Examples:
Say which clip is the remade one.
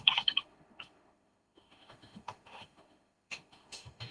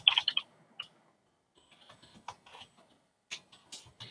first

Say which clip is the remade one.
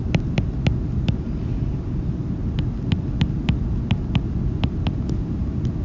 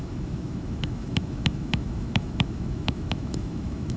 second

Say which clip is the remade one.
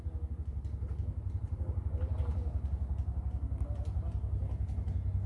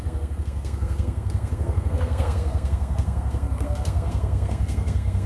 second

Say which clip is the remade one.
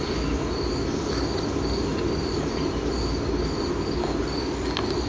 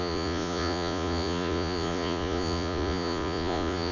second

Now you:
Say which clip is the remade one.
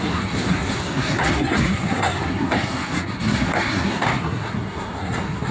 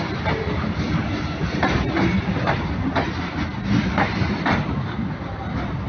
first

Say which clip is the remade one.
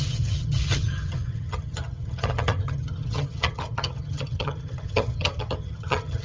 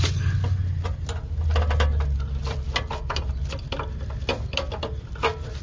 first